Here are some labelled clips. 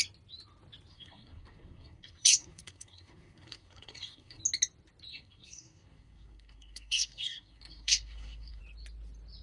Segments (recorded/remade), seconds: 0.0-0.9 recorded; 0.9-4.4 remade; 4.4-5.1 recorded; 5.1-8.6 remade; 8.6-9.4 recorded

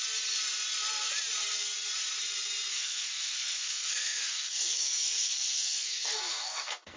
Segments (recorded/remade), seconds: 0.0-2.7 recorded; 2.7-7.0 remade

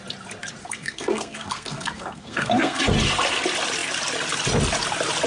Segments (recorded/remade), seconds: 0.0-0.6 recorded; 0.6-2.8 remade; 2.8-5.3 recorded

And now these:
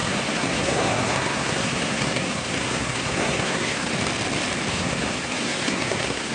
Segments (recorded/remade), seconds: 0.0-3.9 remade; 3.9-4.7 recorded; 4.7-6.3 remade

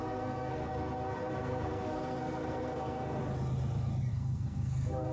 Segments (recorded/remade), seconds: 0.0-0.7 remade; 0.7-1.3 recorded; 1.3-3.2 remade; 3.2-4.1 recorded; 4.1-5.1 remade